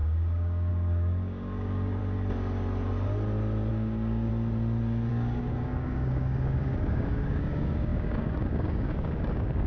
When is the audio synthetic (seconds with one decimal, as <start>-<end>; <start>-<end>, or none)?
0.0-2.0; 3.7-4.3; 5.1-9.7